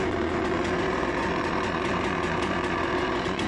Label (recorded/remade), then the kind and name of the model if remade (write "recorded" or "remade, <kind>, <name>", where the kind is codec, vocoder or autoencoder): remade, vocoder, Vocos